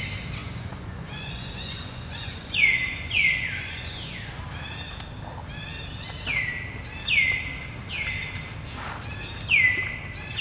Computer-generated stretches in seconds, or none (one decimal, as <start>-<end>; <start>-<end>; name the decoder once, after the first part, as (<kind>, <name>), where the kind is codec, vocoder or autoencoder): 0.4-4.4 (vocoder, Vocos)